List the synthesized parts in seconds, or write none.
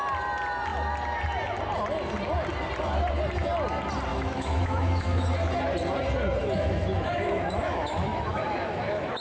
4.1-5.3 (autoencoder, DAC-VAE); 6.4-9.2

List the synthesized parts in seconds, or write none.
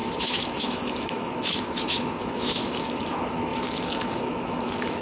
0.0-5.0 (autoencoder, DAC-VAE)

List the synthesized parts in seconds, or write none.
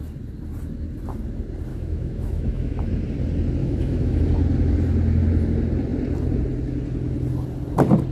1.7-2.9 (autoencoder, DAC-VAE); 3.6-4.2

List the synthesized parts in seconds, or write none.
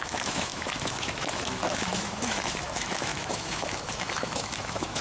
0.0-5.0 (autoencoder, DAC-VAE)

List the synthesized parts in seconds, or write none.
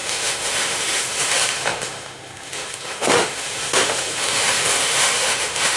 0.0-5.8 (autoencoder, DAC-VAE)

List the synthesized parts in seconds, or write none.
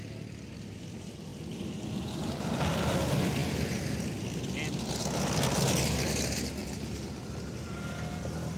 none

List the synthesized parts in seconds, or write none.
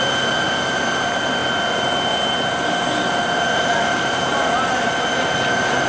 none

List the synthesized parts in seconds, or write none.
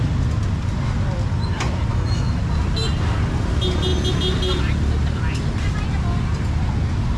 1.9-2.4 (autoencoder, DAC-VAE)